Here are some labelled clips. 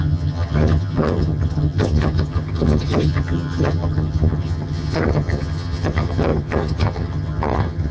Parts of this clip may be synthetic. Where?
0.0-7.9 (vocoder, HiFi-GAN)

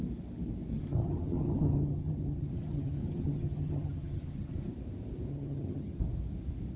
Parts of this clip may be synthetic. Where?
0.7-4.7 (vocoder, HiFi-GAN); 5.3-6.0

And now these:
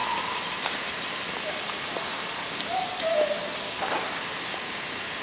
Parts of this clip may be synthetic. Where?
none

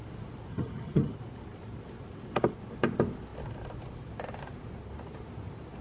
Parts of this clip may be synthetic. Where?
0.5-1.1 (vocoder, HiFi-GAN)